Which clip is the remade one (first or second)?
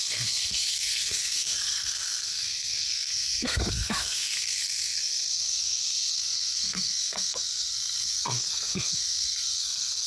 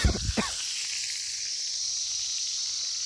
first